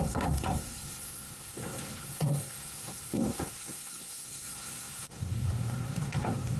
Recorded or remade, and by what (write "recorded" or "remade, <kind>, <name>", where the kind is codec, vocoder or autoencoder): remade, codec, SNAC